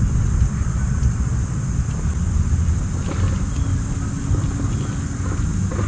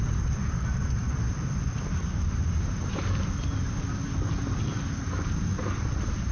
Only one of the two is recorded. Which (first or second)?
first